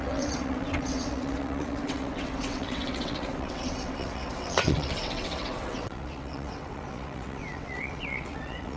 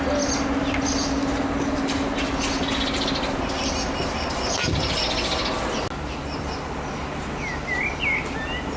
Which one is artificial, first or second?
first